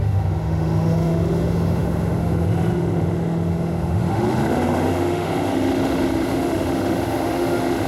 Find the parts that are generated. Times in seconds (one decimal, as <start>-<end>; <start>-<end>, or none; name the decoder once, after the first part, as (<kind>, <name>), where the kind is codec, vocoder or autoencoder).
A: 0.0-7.9 (autoencoder, DAC-VAE)

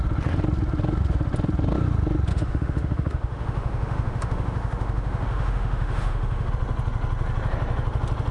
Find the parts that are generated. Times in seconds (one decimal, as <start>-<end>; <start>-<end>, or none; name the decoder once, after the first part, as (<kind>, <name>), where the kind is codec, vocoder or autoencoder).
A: 2.3-6.5 (autoencoder, DAC-VAE)

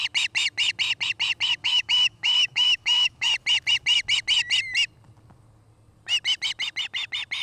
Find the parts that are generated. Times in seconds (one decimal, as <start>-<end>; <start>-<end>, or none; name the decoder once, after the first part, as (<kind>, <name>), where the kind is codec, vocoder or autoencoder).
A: 1.6-3.3 (autoencoder, DAC-VAE)

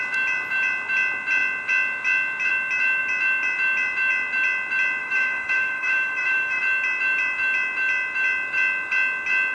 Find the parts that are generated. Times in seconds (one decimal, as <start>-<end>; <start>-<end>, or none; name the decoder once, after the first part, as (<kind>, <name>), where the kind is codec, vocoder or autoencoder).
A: 5.0-6.6 (autoencoder, DAC-VAE)

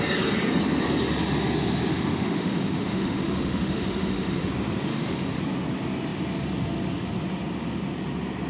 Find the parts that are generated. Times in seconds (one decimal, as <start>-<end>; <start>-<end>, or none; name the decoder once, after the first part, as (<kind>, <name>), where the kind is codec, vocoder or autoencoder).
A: 1.9-4.5 (autoencoder, DAC-VAE); 4.9-5.4

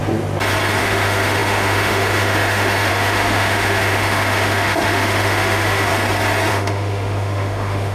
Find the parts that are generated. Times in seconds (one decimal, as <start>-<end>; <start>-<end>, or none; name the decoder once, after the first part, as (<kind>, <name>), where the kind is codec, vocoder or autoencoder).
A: 0.8-5.9 (autoencoder, DAC-VAE); 6.5-7.9